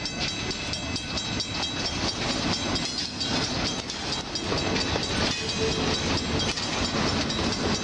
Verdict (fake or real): real